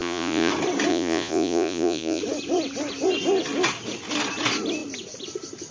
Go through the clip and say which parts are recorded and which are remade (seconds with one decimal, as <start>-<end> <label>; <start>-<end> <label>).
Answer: 0.0-0.5 remade; 0.5-0.9 recorded; 0.9-2.2 remade; 2.2-5.7 recorded